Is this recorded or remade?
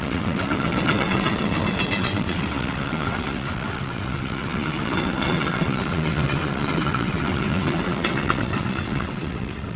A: remade